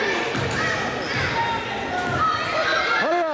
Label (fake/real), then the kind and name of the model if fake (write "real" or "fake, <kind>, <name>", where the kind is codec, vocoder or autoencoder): real